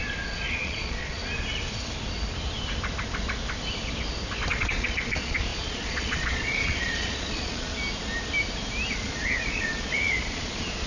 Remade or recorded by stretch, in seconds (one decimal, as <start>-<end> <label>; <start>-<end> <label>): 0.0-1.2 remade; 1.2-4.5 recorded; 4.5-7.7 remade; 7.7-8.9 recorded; 8.9-10.9 remade